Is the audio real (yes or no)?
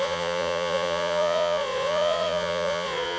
no